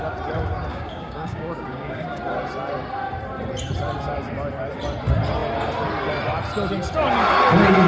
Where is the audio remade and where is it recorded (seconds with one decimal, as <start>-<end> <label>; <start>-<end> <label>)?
0.0-0.7 recorded; 0.7-2.2 remade; 2.2-7.9 recorded